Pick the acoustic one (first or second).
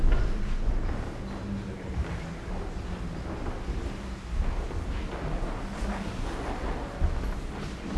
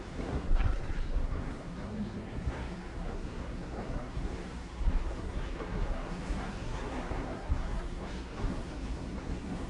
first